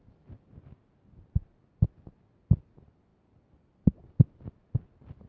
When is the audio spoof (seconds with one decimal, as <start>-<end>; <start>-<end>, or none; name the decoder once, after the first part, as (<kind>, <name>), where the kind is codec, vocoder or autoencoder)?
none

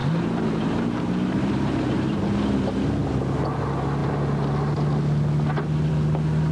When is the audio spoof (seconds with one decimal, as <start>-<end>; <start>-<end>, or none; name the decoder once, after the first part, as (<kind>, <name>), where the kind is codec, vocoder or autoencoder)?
0.0-2.2 (vocoder, BigVGAN v2)

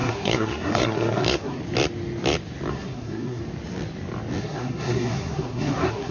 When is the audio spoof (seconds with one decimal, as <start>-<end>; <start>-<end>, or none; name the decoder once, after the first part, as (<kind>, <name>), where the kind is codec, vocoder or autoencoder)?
0.0-1.6 (codec, SNAC); 2.7-3.4; 4.4-6.1

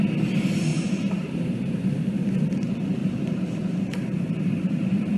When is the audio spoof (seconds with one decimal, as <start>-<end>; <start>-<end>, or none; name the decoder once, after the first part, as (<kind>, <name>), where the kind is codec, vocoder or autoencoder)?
0.7-2.4 (vocoder, BigVGAN v2); 3.0-5.2

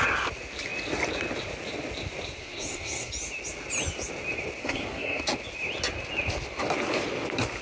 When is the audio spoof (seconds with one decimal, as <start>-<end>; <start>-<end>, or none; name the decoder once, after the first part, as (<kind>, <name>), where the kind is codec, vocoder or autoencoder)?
2.4-3.1 (codec, SNAC); 4.6-5.2

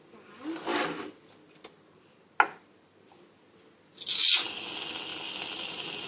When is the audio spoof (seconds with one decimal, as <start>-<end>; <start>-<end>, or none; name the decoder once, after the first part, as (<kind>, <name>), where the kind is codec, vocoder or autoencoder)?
none

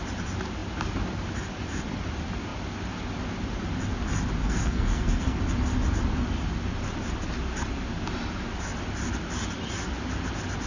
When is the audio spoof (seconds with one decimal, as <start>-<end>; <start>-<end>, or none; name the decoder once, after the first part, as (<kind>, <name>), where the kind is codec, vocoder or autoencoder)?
4.4-5.4 (codec, SNAC)

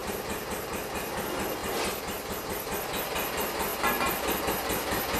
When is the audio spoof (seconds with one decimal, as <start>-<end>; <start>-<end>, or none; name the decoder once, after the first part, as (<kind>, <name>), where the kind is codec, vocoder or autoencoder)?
0.0-0.5 (vocoder, BigVGAN v2)